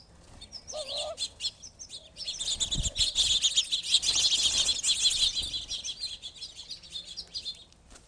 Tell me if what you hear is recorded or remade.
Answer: recorded